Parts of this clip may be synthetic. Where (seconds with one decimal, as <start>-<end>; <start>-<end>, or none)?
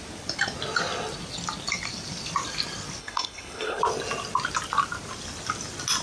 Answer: 3.0-3.8